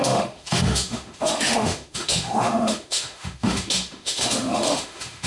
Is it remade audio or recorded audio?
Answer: remade